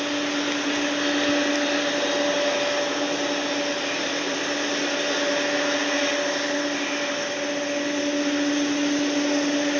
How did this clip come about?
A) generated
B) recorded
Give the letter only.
B